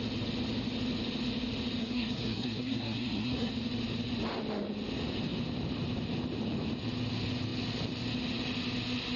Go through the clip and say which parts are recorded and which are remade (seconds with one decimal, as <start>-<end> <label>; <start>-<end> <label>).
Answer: 0.0-1.8 recorded; 1.8-3.5 remade; 3.5-9.2 recorded